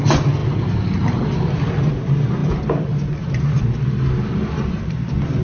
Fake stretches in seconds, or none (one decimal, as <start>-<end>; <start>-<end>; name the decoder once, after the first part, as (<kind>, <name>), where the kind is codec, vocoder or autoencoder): none